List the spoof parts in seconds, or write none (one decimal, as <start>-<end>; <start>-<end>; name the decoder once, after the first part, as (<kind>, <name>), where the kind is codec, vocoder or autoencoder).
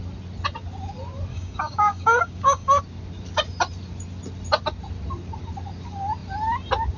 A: 1.3-2.8 (codec, DAC)